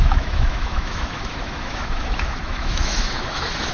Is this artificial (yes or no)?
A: yes